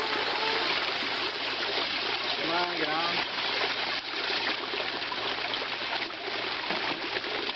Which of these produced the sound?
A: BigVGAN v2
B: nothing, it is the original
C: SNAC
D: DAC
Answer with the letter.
B